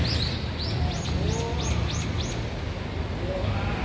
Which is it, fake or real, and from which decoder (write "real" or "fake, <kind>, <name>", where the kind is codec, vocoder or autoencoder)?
real